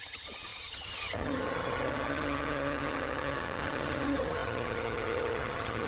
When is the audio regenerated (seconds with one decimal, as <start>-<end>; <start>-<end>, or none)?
0.0-5.9

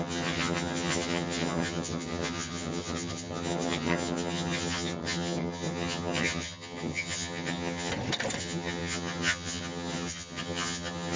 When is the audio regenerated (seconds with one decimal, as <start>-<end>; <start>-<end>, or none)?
0.0-7.9; 8.4-11.2